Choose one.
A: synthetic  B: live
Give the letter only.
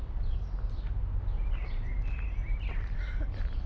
B